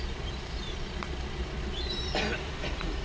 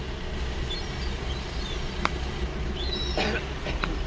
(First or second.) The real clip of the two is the second